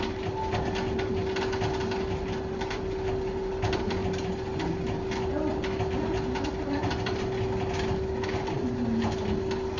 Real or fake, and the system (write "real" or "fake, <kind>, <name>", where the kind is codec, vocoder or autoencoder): real